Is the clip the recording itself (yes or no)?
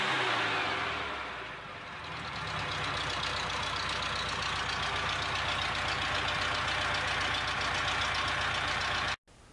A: yes